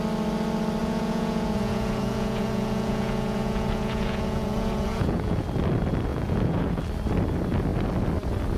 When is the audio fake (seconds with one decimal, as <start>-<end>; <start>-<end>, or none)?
0.8-5.4; 6.1-6.8